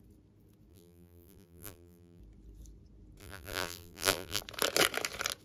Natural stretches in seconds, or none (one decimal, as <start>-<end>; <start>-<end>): 0.0-0.7; 2.2-3.2; 4.4-5.4